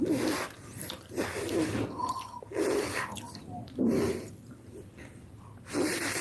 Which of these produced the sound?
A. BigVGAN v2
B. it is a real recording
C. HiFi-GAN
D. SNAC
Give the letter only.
B